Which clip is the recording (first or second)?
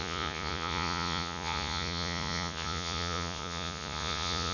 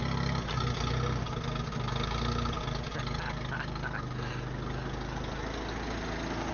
second